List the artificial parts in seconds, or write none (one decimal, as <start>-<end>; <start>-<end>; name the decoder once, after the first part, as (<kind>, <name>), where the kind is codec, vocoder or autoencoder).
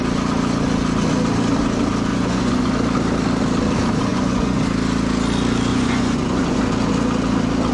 2.1-2.7 (vocoder, Vocos); 4.1-4.6; 5.7-6.6